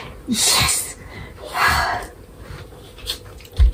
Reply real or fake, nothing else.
real